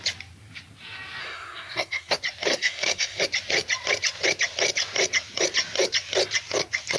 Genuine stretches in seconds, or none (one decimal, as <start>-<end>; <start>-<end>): 0.0-1.2; 2.1-2.5; 3.2-7.0